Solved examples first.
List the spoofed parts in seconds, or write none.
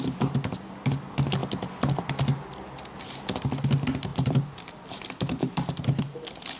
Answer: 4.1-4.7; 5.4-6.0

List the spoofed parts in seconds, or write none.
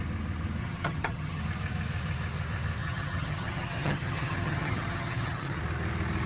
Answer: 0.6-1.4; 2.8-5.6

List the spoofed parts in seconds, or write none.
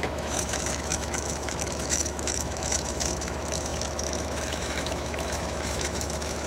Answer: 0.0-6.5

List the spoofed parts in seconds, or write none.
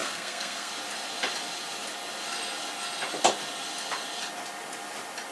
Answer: 0.0-0.7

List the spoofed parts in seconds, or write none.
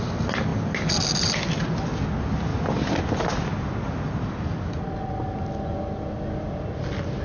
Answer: none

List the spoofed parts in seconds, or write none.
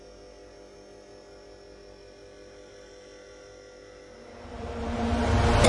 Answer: 4.5-5.3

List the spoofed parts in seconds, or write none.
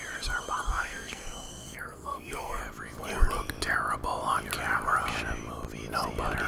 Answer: 0.7-2.6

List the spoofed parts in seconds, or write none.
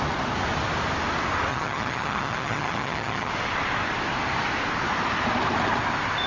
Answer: 1.5-3.3